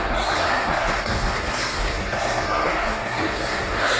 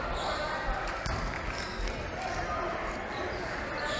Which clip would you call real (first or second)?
second